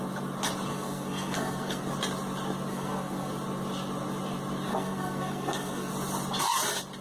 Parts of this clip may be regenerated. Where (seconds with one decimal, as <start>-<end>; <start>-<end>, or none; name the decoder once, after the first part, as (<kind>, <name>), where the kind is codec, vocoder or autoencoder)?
0.7-1.8 (codec, SNAC); 2.7-3.3; 4.7-5.9